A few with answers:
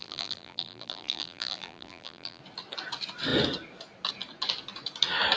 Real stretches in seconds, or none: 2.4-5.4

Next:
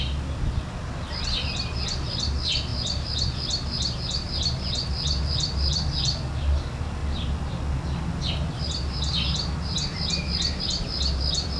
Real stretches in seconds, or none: 0.0-11.6

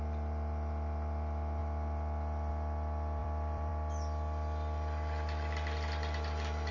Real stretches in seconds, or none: 0.0-1.6; 2.5-3.2; 3.7-6.7